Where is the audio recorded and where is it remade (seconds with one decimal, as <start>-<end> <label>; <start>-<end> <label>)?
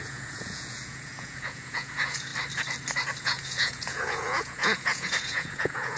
0.0-2.3 remade; 2.3-3.2 recorded; 3.2-6.0 remade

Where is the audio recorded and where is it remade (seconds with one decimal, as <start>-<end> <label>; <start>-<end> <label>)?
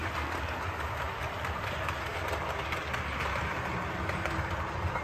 0.0-5.0 recorded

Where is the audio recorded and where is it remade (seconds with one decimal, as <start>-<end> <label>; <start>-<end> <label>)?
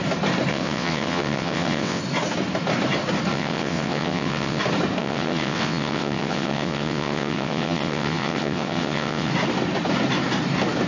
0.0-0.5 recorded; 0.5-2.0 remade; 2.0-3.3 recorded; 3.3-4.6 remade; 4.6-5.0 recorded; 5.0-9.3 remade; 9.3-10.9 recorded